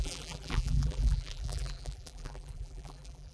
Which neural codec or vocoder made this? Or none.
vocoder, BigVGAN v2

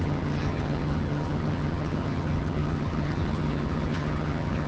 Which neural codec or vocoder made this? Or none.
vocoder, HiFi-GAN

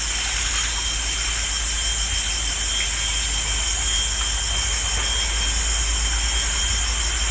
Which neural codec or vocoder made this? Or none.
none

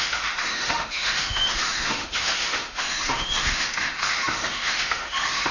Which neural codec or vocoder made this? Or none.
autoencoder, DAC-VAE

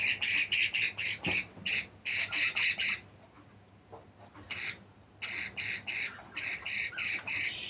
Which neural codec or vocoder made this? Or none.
vocoder, BigVGAN v2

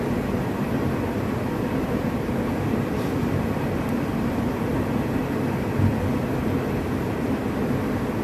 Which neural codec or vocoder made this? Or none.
none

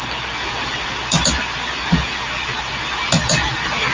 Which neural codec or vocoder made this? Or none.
none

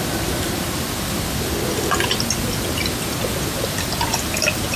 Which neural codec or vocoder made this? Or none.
none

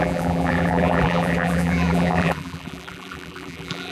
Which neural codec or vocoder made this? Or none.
vocoder, BigVGAN v2